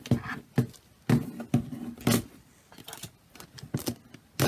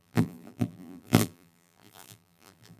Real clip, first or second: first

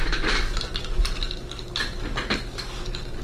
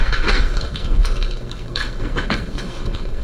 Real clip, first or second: first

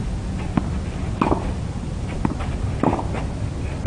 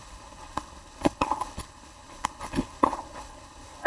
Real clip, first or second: first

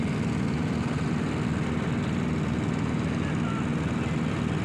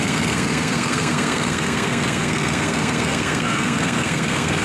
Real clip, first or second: first